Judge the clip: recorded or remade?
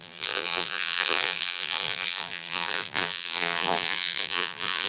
remade